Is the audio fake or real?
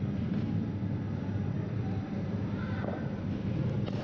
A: real